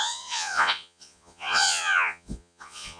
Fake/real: fake